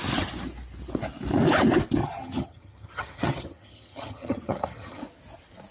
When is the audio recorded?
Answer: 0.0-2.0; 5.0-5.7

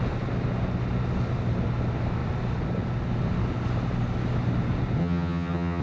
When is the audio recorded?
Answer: 0.0-5.0

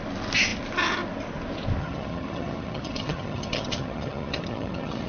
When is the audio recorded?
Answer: 0.0-1.8

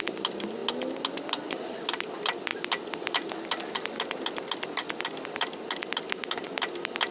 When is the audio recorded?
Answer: 0.0-7.1